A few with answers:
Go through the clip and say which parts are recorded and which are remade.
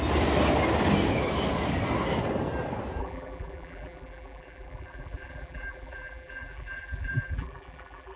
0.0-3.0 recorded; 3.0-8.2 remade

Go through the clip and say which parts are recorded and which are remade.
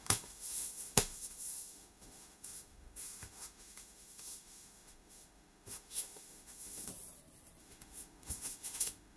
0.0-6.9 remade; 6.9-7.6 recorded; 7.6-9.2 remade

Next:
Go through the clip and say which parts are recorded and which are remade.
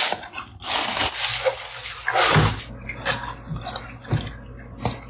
0.0-5.1 recorded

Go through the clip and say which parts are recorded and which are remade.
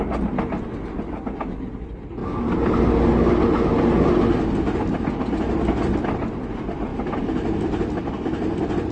0.0-8.9 recorded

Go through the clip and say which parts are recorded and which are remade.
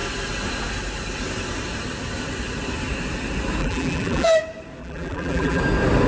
0.0-3.6 recorded; 3.6-4.3 remade; 4.3-4.8 recorded; 4.8-5.6 remade; 5.6-6.1 recorded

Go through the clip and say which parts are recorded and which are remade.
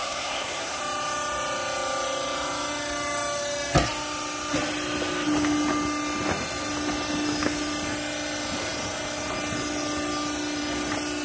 0.0-0.8 remade; 0.8-11.2 recorded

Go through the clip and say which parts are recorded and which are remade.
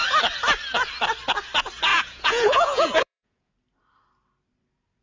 0.0-1.9 recorded; 1.9-3.5 remade; 3.5-5.0 recorded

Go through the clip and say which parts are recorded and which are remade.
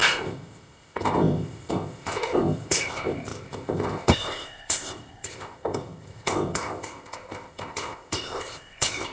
0.0-9.1 remade